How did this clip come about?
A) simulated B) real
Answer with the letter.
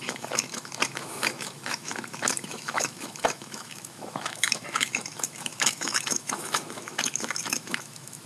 A